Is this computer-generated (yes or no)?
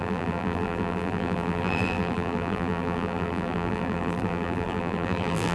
yes